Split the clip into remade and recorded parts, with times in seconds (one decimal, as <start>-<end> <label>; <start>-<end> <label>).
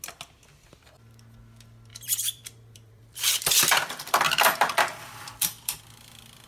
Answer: 0.0-1.9 recorded; 1.9-5.8 remade; 5.8-6.5 recorded